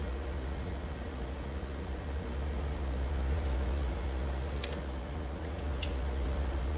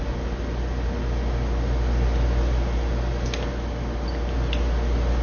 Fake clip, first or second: first